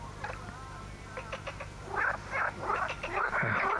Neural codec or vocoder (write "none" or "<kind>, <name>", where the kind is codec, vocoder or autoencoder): none